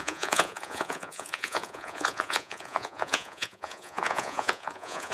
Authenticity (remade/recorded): remade